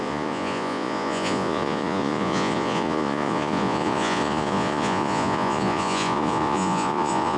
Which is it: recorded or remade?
remade